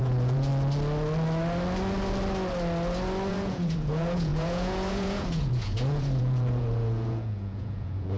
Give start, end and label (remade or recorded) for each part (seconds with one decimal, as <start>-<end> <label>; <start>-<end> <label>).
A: 0.0-0.5 remade; 0.5-3.3 recorded; 3.3-8.2 remade